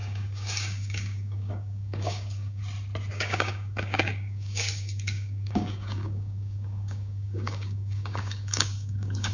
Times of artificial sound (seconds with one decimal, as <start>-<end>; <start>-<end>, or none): 0.0-2.6; 3.1-9.3

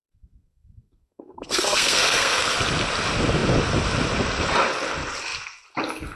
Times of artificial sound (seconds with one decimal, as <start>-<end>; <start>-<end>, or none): 0.0-2.5